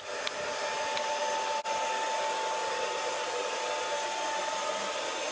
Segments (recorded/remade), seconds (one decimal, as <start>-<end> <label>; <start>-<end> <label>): 0.0-5.3 recorded